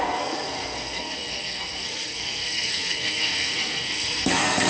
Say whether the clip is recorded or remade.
remade